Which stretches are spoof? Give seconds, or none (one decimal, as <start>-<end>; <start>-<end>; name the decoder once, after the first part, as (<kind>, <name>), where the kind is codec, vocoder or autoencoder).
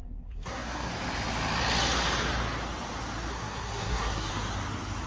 0.0-0.9 (codec, SNAC); 3.3-4.3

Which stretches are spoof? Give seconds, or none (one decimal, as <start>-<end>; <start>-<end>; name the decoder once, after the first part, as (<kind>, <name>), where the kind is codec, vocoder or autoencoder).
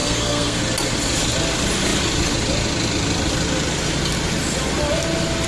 0.0-0.6 (codec, SNAC)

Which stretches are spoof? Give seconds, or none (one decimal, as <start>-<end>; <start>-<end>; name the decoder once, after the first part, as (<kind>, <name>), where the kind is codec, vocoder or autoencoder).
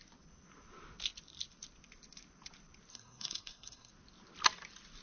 2.9-3.9 (codec, SNAC)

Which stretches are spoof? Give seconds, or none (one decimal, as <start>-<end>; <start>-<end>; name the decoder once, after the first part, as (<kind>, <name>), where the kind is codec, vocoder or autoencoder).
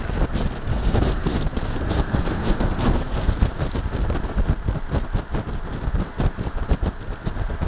0.7-3.5 (codec, SNAC)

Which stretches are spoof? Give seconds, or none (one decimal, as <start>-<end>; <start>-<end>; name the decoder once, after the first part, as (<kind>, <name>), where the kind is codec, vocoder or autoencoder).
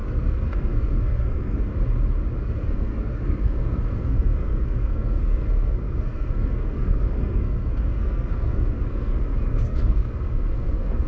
0.0-1.7 (codec, SNAC); 2.4-11.1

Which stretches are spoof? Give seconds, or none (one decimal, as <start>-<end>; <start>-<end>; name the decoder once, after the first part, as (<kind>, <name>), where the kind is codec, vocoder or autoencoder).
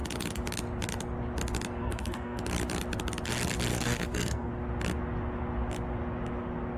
1.8-2.4 (codec, SNAC); 3.7-4.5